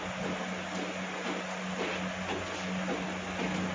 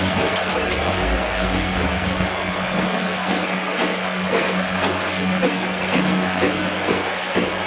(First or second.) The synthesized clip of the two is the second